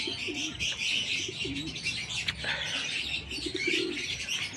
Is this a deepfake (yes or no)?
no